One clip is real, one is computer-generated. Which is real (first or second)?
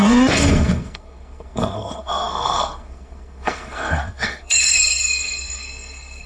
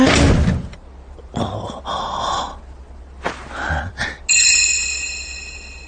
second